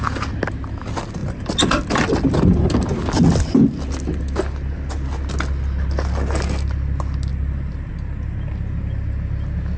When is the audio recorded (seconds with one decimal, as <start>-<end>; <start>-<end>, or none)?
0.0-1.2; 2.7-7.3; 7.9-9.8